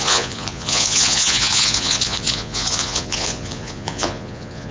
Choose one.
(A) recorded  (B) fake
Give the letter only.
B